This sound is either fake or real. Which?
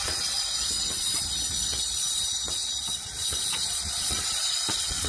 fake